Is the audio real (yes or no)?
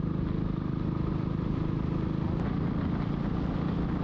yes